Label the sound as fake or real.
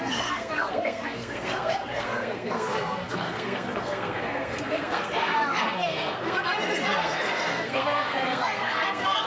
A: fake